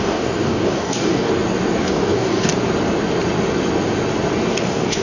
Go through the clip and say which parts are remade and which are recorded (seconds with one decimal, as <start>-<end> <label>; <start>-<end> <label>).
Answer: 0.0-1.3 remade; 1.3-1.8 recorded; 1.8-2.5 remade; 2.5-4.5 recorded; 4.5-5.0 remade

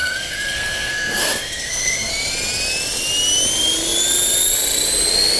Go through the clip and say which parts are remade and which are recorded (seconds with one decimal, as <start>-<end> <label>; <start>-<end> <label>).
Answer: 0.0-2.1 remade; 2.1-5.4 recorded

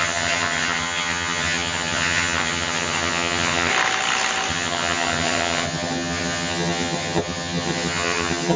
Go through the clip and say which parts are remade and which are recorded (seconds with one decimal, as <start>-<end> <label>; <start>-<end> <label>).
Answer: 0.0-3.7 remade; 3.7-4.5 recorded; 4.5-8.6 remade

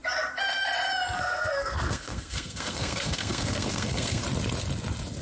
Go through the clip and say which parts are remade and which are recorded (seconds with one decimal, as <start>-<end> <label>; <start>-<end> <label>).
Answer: 0.0-1.2 recorded; 1.2-4.2 remade; 4.2-5.2 recorded